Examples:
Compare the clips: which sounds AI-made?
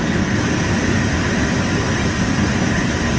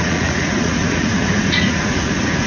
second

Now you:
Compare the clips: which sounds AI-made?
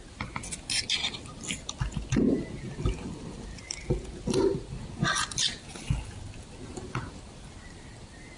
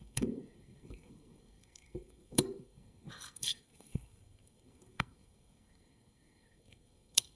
second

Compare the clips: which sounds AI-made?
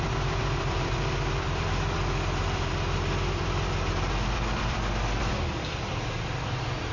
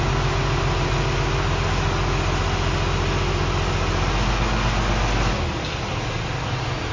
first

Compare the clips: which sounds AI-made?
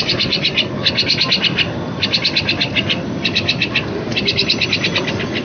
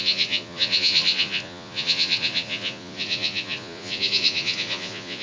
second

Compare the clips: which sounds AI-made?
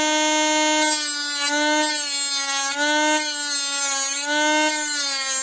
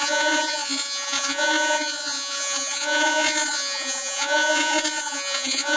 second